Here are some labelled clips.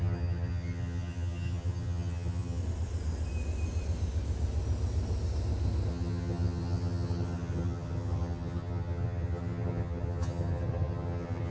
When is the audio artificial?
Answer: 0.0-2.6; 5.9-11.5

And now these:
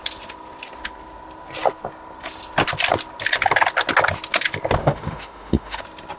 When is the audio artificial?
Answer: 4.8-5.8